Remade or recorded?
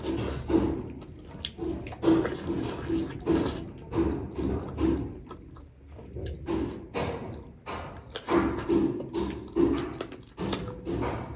recorded